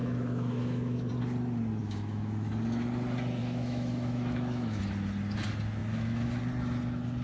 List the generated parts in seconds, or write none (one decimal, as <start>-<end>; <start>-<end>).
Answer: 0.0-1.1; 1.8-2.5; 3.4-4.8; 5.8-6.4